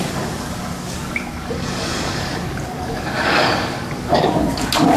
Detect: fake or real fake